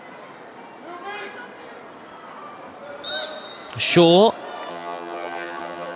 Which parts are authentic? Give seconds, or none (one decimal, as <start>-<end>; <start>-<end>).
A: 0.0-4.7